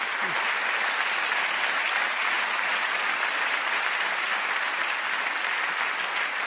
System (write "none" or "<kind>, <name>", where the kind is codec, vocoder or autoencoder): none